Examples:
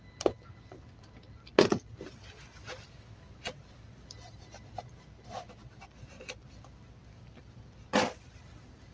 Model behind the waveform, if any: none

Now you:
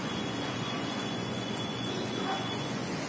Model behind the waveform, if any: vocoder, Vocos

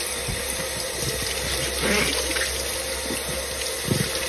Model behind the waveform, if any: none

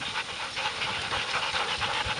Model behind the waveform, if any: none